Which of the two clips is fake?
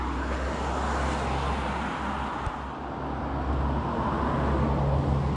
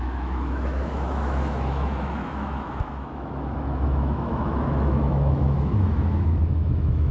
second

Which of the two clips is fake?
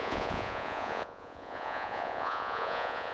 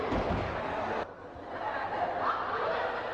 first